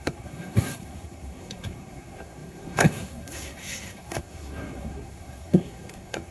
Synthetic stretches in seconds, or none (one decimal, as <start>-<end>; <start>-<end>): 0.0-6.3